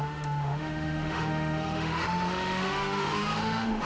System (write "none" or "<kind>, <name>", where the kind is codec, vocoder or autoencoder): autoencoder, DAC-VAE